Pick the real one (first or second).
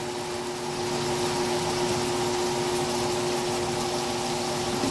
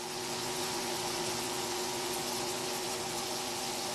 first